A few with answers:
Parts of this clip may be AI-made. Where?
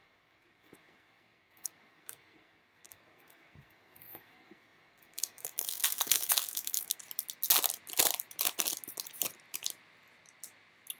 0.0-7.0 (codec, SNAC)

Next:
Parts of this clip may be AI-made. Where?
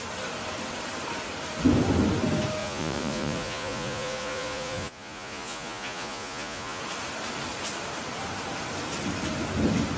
2.6-6.8 (vocoder, Vocos)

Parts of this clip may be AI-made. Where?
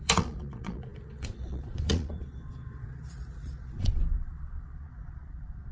0.0-5.7 (vocoder, Vocos)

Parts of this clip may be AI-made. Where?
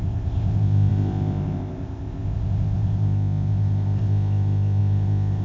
0.0-5.4 (codec, ZipCodec)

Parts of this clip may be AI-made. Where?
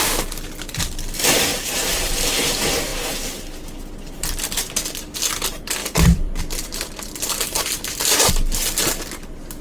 1.5-2.1 (vocoder, BigVGAN v2); 5.8-8.3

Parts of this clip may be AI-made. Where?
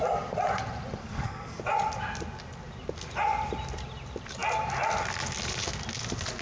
1.0-1.6 (codec, SNAC)